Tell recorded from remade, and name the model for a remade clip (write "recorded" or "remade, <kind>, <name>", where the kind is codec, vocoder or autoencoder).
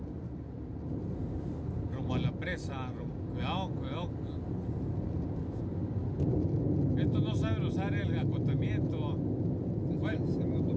recorded